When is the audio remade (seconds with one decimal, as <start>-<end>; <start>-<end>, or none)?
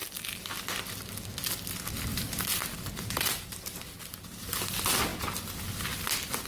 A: 2.1-4.0